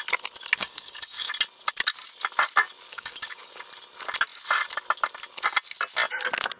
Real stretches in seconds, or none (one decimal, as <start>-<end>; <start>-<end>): 0.0-0.6; 1.3-2.9; 3.6-6.6